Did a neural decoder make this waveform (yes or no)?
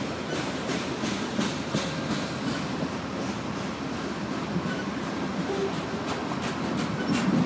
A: no